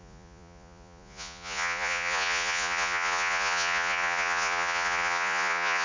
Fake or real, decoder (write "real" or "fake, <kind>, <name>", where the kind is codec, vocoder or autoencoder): fake, vocoder, Vocos